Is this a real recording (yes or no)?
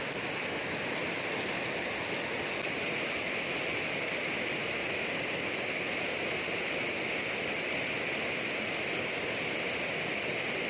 yes